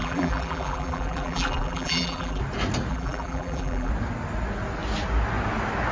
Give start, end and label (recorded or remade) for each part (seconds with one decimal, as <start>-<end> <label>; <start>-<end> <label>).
0.0-2.4 remade; 2.4-2.9 recorded; 2.9-3.9 remade; 3.9-5.9 recorded